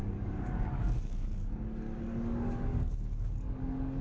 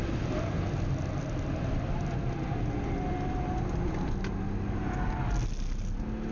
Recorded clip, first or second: second